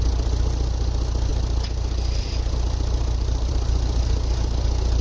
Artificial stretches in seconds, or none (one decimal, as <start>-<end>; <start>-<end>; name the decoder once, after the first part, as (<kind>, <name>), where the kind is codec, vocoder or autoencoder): none